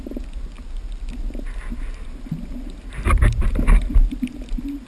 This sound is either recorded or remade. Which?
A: recorded